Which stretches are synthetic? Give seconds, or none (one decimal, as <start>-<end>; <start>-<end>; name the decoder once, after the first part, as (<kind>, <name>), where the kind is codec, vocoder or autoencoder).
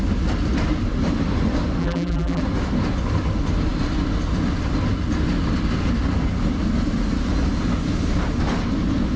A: 1.8-2.4 (vocoder, BigVGAN v2)